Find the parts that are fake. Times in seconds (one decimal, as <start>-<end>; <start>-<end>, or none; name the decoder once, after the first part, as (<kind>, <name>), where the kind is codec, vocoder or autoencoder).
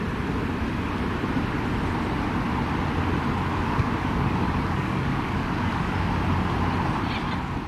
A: 3.5-6.1 (codec, DAC)